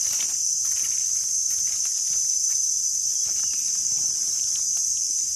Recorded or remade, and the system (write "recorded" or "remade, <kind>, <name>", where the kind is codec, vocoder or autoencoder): recorded